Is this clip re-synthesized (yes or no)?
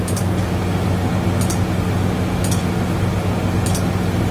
no